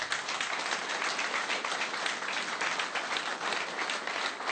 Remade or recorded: recorded